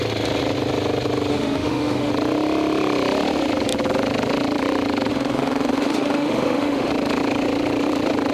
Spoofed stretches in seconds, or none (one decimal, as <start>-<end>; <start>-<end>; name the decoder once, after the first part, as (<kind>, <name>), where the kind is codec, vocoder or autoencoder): 1.3-2.1 (autoencoder, DAC-VAE); 5.1-6.9